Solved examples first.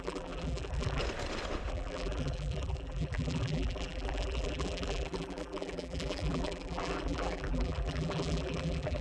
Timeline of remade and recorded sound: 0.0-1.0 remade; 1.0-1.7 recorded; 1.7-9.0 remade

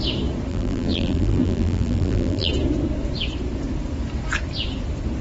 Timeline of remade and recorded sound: 0.0-0.5 recorded; 0.5-2.5 remade; 2.5-5.2 recorded